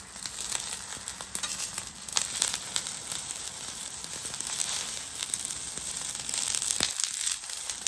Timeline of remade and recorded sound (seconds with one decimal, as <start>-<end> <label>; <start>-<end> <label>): 0.0-7.9 recorded